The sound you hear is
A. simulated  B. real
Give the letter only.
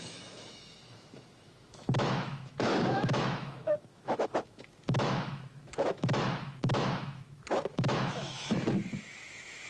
A